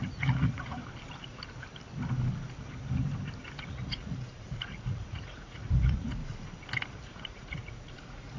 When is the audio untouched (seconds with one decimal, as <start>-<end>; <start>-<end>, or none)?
0.8-3.6; 6.2-6.9